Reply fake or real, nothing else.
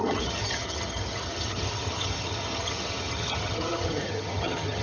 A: fake